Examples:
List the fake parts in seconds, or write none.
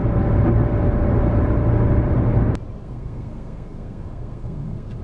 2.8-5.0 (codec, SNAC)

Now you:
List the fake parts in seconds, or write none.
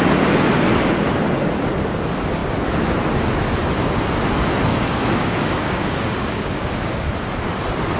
4.7-7.1 (codec, DAC)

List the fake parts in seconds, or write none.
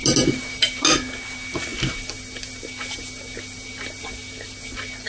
none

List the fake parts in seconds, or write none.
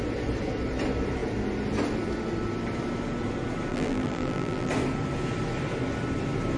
3.7-4.7 (vocoder, BigVGAN v2)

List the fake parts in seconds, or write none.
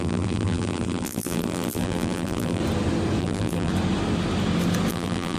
0.0-2.6 (vocoder, BigVGAN v2); 3.2-3.7; 4.9-5.4